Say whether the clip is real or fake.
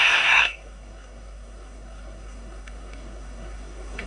fake